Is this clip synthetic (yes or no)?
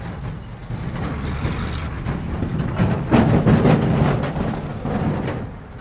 no